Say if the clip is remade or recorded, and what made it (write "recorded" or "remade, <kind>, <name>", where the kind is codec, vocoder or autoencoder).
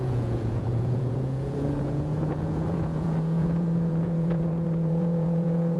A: remade, vocoder, Vocos